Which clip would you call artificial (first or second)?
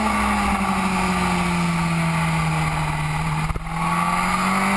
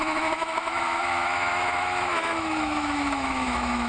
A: second